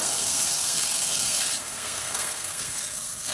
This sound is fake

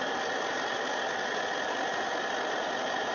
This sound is real